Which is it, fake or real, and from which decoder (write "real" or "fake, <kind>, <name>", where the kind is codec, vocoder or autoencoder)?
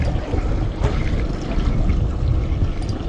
real